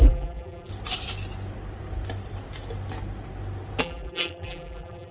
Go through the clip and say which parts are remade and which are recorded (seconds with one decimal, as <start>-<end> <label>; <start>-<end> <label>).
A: 0.0-0.7 remade; 0.7-3.8 recorded; 3.8-5.1 remade